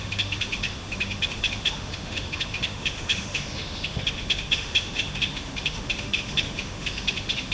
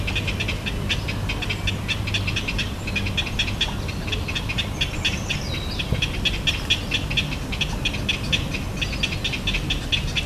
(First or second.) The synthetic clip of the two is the first